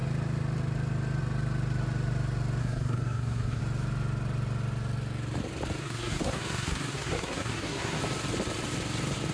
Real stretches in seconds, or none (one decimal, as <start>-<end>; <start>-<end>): 0.0-2.6; 3.6-5.8; 8.0-9.3